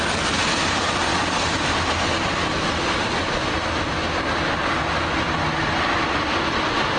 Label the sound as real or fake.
real